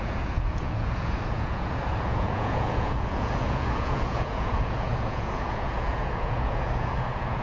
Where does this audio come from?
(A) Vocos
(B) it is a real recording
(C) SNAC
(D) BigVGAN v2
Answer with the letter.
A